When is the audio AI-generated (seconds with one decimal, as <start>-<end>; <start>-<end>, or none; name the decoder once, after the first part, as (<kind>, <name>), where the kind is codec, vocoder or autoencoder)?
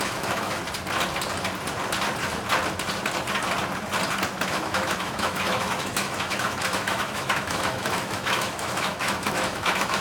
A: 0.0-0.6 (autoencoder, DAC-VAE); 4.5-10.0